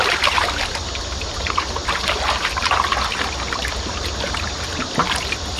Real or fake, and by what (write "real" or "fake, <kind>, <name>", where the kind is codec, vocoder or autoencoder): real